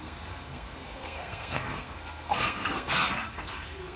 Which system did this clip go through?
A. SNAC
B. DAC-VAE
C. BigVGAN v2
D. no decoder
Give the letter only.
A